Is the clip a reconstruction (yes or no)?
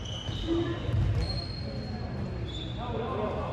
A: no